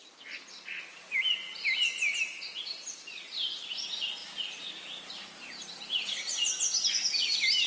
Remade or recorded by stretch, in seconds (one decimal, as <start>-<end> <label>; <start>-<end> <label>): 0.0-1.9 recorded; 1.9-2.5 remade; 2.5-7.7 recorded